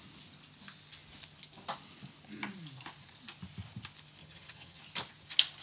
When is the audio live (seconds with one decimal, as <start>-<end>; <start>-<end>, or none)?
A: 0.0-4.2; 4.8-5.6